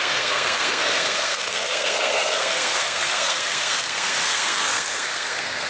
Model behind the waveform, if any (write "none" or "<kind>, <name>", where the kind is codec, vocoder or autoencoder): codec, SNAC